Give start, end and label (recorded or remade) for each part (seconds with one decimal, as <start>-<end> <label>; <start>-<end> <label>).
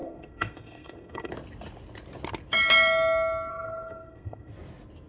0.0-1.3 remade; 1.3-3.5 recorded; 3.5-4.5 remade; 4.5-5.1 recorded